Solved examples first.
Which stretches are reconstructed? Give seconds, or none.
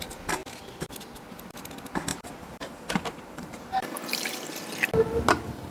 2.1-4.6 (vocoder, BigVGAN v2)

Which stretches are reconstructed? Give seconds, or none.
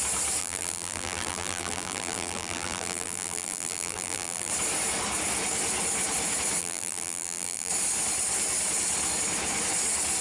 0.4-4.5 (vocoder, BigVGAN v2); 6.6-7.7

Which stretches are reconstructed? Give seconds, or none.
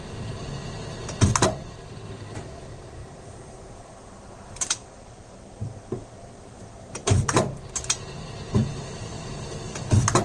3.0-4.1 (vocoder, BigVGAN v2); 4.8-5.8; 8.6-9.2